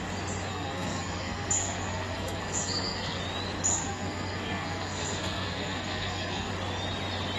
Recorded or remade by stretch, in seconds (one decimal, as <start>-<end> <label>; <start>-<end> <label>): 0.0-0.5 recorded; 0.5-3.2 remade; 3.2-3.7 recorded; 3.7-6.5 remade; 6.5-7.4 recorded